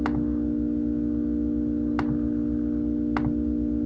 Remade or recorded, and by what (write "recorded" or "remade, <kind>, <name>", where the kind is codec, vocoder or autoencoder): recorded